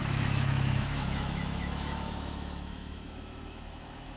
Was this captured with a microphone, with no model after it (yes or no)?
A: no